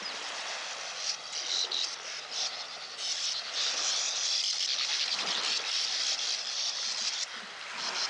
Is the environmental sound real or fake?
real